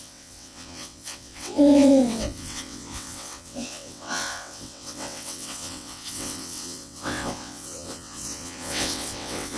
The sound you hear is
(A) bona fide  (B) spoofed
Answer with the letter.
B